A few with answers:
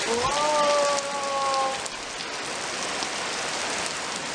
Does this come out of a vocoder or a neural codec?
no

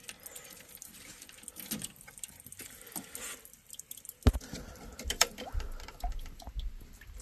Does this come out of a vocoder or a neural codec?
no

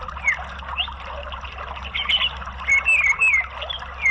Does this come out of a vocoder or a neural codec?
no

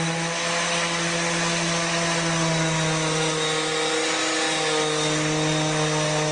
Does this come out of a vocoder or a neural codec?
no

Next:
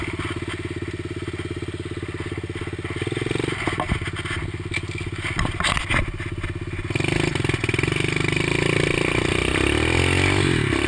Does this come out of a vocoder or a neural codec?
no